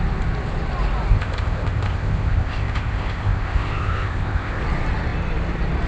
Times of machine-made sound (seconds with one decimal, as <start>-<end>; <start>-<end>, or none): 1.1-4.6